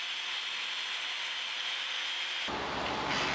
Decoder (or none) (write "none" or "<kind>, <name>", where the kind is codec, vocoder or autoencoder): none